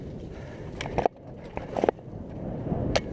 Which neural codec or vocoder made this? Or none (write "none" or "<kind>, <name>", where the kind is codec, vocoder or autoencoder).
none